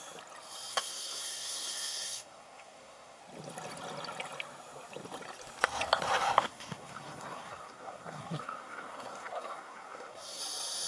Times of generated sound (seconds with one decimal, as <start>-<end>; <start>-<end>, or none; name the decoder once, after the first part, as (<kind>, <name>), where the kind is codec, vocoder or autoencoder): 0.7-3.2 (codec, SNAC); 6.4-10.4